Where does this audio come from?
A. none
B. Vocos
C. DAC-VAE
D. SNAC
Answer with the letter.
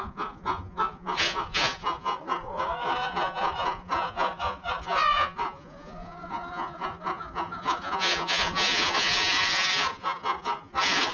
B